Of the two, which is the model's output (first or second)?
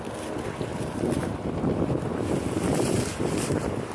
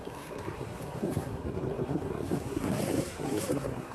second